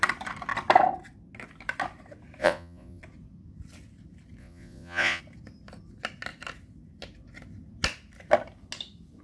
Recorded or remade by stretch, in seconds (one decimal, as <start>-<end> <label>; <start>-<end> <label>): 0.0-2.4 recorded; 2.4-3.0 remade; 3.0-4.4 recorded; 4.4-5.2 remade; 5.2-9.2 recorded